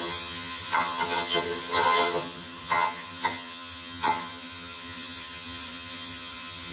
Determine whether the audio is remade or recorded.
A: remade